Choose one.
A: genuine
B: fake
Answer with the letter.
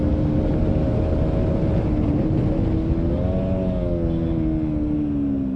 A